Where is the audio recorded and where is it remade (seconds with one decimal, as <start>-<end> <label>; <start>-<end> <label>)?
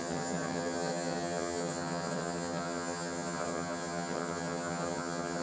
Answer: 0.0-5.4 remade